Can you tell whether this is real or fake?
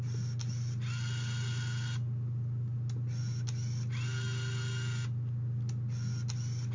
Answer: real